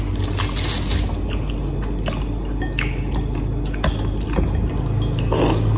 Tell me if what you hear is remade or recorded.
recorded